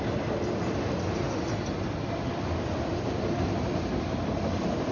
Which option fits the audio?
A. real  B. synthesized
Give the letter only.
A